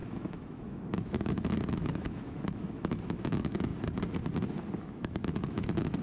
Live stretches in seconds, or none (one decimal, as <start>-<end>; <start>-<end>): 3.7-4.8